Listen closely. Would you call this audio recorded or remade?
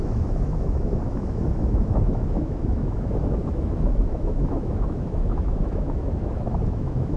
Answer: remade